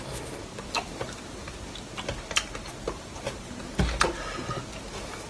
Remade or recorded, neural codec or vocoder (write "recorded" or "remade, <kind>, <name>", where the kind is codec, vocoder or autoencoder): recorded